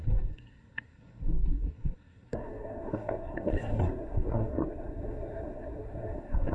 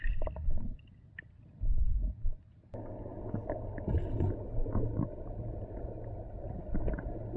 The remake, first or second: first